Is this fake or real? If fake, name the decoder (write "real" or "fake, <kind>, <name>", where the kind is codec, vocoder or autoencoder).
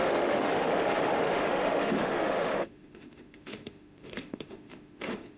fake, autoencoder, DAC-VAE